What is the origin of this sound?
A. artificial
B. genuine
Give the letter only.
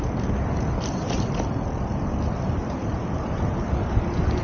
B